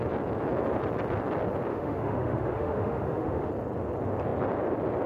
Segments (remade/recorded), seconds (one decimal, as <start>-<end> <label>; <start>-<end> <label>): 0.0-1.7 recorded; 1.7-3.5 remade; 3.5-5.1 recorded